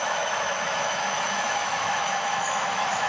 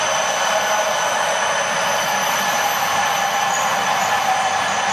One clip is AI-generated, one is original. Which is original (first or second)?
second